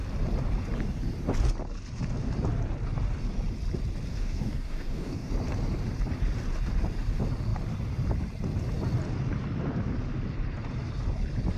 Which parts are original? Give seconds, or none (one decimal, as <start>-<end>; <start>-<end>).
0.0-4.1; 5.3-11.6